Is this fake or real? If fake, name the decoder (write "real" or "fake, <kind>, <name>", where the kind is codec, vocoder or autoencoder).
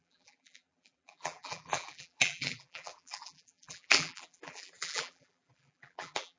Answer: fake, vocoder, BigVGAN v2